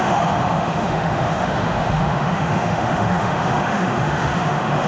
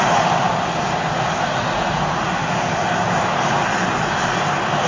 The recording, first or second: second